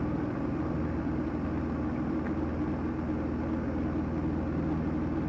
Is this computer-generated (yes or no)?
no